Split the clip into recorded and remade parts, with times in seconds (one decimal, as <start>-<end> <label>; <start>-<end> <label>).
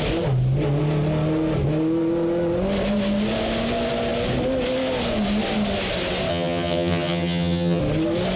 0.0-6.3 recorded; 6.3-7.8 remade; 7.8-8.4 recorded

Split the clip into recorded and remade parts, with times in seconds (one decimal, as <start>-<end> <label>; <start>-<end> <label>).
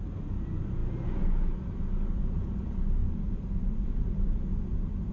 0.0-3.0 recorded; 3.0-5.1 remade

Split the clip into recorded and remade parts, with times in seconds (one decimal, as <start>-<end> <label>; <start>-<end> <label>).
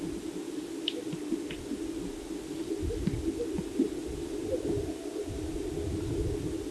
0.0-6.7 recorded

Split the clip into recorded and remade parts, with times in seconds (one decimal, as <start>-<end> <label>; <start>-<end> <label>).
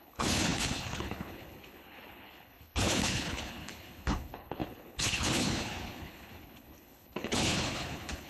0.0-8.3 remade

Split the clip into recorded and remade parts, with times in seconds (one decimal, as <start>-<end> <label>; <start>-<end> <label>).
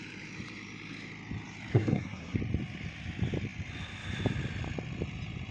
0.0-1.7 recorded; 1.7-2.4 remade; 2.4-5.5 recorded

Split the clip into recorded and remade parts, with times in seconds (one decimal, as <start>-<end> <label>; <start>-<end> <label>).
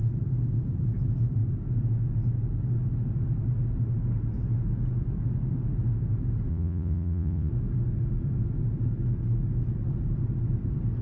0.0-6.5 recorded; 6.5-7.5 remade; 7.5-11.0 recorded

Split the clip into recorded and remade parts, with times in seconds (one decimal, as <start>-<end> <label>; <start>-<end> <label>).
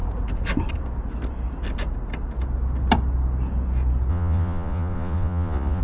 0.0-4.1 recorded; 4.1-5.8 remade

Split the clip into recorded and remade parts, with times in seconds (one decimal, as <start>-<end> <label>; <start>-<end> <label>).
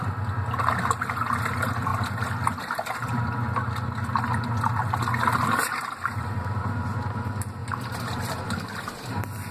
0.0-9.5 recorded